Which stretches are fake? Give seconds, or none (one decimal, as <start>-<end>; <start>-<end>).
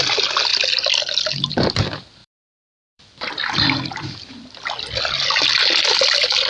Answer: 0.5-1.5; 2.2-4.3